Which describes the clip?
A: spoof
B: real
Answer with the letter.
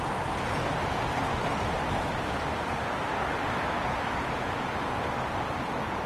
A